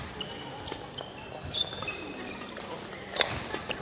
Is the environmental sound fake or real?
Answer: real